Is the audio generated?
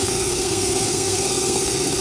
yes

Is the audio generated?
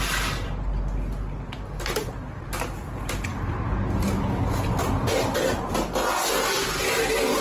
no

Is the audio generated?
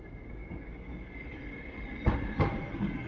no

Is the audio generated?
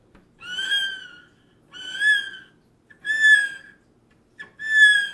no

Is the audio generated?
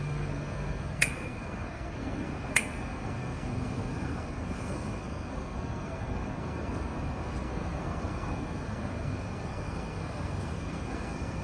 yes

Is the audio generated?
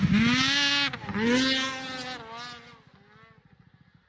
no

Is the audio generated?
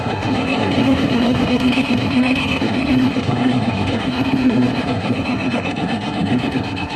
yes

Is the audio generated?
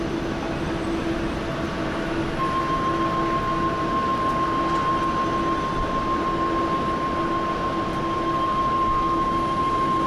no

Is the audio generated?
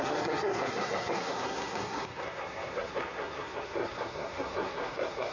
yes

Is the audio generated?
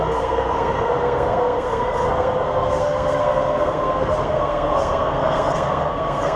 yes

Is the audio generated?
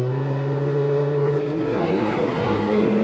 yes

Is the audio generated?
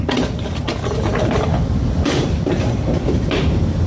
no